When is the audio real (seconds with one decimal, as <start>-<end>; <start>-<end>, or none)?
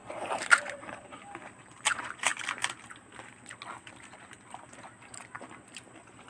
2.3-6.3